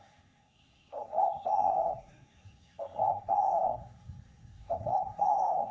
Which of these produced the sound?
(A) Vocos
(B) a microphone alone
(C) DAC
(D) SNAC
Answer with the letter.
D